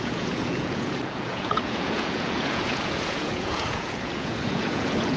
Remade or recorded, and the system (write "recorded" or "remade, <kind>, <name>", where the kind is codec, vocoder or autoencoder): remade, vocoder, Vocos